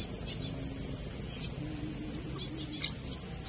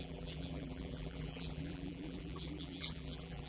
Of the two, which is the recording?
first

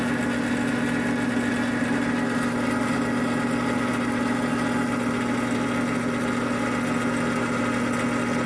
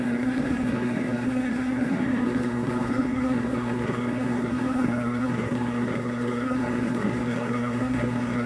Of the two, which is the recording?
first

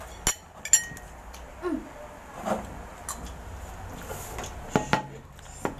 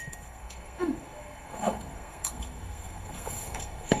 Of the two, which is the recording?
first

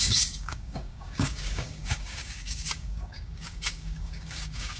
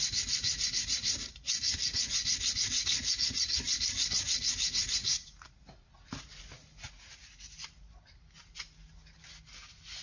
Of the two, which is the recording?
second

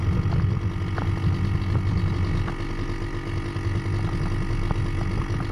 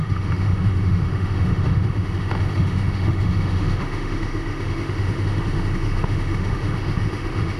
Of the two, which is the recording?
first